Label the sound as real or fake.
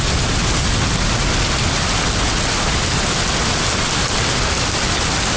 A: real